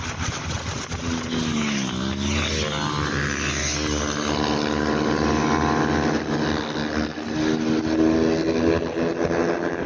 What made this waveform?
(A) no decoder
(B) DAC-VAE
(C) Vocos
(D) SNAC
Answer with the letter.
A